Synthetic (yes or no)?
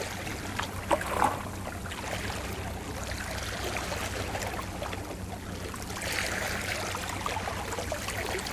no